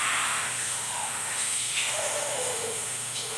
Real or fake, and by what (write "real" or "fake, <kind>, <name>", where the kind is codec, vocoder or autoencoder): fake, autoencoder, DAC-VAE